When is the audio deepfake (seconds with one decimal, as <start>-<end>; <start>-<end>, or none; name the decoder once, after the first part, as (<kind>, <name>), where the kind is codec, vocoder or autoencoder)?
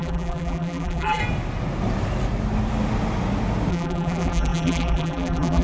0.0-1.2 (vocoder, BigVGAN v2); 3.7-5.6